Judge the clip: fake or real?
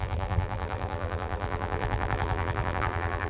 fake